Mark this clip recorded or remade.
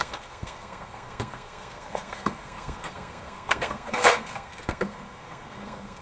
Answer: remade